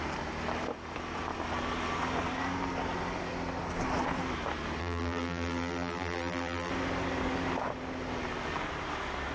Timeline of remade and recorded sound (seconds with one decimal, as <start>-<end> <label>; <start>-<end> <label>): 0.0-4.8 recorded; 4.8-6.7 remade; 6.7-9.3 recorded